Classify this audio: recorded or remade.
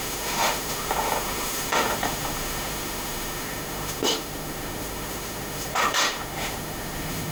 remade